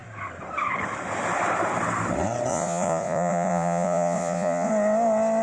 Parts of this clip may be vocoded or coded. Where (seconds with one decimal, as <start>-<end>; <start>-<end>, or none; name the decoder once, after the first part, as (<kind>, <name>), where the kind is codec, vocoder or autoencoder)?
2.5-4.7 (vocoder, Vocos)

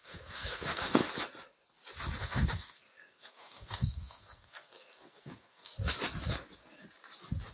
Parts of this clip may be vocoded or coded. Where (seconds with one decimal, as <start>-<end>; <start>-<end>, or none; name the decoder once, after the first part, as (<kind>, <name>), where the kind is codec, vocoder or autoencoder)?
0.0-1.0 (codec, SNAC); 2.2-5.7

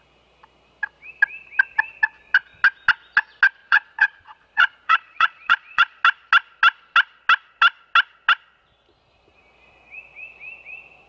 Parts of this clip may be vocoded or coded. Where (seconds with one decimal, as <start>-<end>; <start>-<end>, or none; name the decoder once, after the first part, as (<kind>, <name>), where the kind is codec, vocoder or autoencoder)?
3.6-6.0 (vocoder, Vocos)

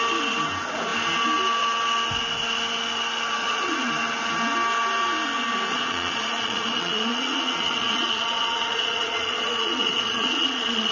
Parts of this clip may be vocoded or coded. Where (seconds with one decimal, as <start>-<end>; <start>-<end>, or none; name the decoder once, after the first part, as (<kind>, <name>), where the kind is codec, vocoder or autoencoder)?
3.4-3.9 (vocoder, Vocos); 5.7-10.9

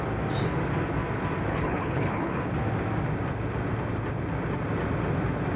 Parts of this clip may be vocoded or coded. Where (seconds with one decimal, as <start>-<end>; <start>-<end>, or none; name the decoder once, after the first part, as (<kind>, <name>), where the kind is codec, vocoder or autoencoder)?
1.5-2.4 (codec, HILCodec)

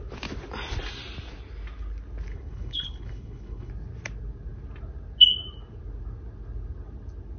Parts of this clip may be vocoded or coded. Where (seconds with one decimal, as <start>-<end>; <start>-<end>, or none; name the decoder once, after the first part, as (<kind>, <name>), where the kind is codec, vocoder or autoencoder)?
2.3-3.7 (codec, HILCodec)

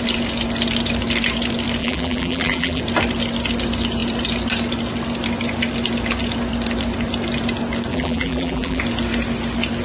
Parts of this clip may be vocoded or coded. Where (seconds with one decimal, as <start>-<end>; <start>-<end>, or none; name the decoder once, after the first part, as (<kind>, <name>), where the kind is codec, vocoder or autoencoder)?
1.8-2.8 (vocoder, BigVGAN v2); 7.9-8.8

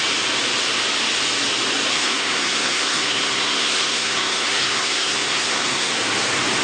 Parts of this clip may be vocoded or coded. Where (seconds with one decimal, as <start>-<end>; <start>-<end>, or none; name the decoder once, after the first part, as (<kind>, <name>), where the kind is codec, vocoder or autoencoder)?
1.9-5.9 (codec, SNAC)